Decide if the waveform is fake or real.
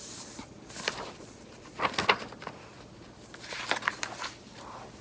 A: real